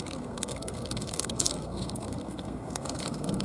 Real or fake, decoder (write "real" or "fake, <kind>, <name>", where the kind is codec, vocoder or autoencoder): fake, codec, SNAC